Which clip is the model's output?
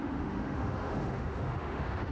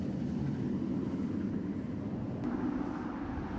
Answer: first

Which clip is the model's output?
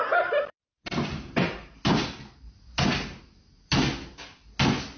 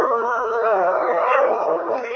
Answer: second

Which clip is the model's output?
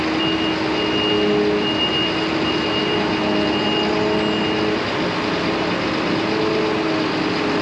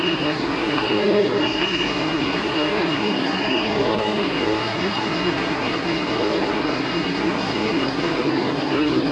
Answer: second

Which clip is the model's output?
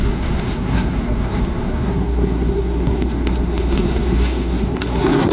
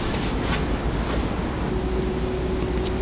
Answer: first